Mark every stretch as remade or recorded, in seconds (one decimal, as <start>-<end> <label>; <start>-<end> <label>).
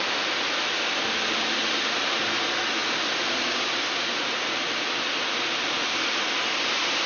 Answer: 0.0-7.1 recorded